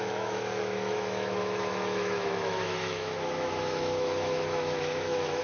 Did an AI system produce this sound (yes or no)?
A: yes